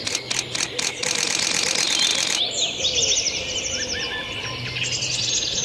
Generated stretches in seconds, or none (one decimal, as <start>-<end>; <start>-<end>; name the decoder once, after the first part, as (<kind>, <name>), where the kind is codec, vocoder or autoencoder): none